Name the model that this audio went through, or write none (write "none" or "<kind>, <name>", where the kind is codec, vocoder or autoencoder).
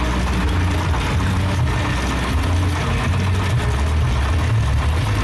none